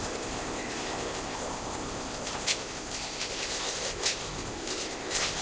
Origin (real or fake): fake